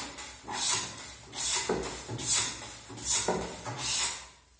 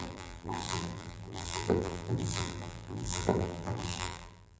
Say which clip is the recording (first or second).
first